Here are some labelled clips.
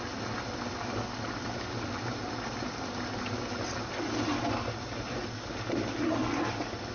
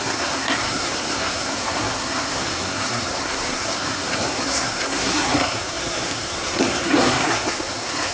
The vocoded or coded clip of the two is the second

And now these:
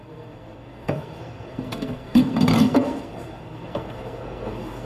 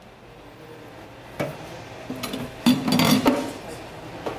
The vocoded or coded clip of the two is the first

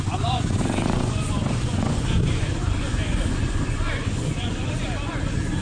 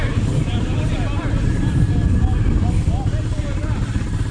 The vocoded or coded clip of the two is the first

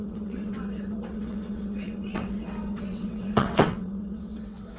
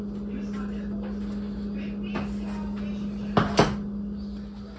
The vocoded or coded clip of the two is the first